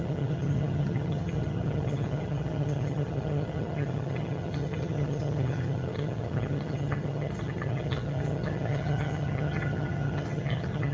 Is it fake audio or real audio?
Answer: fake